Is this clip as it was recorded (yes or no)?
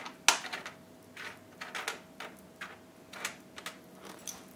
yes